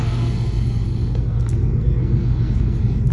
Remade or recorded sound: remade